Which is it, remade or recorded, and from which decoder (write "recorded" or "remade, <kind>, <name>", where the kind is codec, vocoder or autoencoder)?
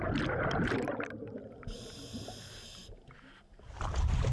recorded